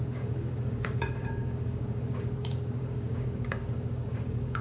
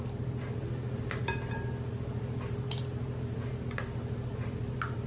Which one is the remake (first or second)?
first